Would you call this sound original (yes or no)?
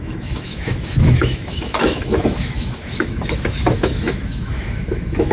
no